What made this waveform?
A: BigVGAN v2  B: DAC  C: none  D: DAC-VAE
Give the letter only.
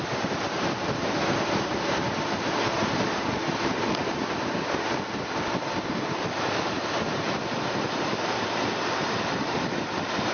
A